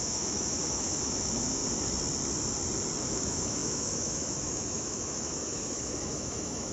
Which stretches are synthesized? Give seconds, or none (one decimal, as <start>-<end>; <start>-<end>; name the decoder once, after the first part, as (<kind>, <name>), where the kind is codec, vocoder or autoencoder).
0.0-1.6 (autoencoder, DAC-VAE); 3.0-6.7